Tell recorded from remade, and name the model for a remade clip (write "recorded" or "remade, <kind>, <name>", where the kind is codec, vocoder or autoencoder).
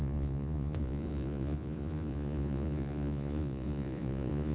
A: remade, vocoder, Vocos